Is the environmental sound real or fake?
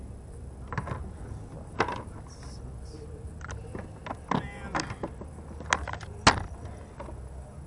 real